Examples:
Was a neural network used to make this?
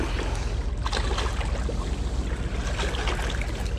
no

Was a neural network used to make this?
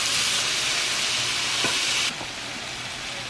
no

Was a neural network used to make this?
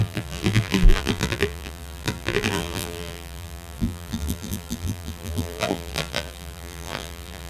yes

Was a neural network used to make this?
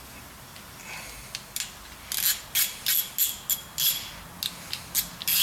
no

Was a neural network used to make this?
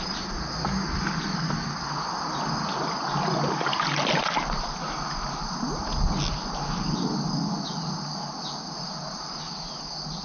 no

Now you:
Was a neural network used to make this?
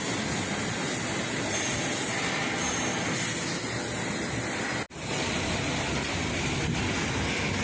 no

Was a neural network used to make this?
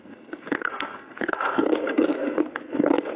yes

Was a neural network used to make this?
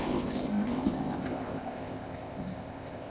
yes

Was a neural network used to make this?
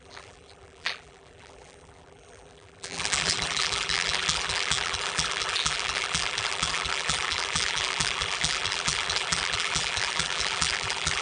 yes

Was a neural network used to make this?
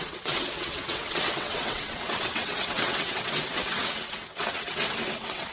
yes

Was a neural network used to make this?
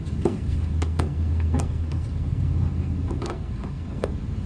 yes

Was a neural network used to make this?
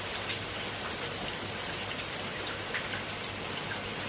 no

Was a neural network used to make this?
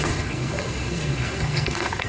yes